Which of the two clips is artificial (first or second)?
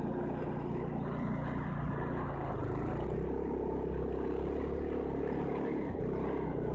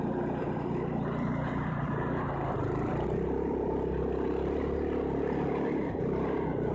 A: second